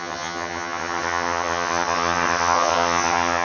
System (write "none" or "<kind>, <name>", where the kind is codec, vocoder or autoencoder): vocoder, HiFi-GAN